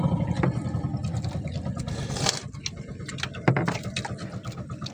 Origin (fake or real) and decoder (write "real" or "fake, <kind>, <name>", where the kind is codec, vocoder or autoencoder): real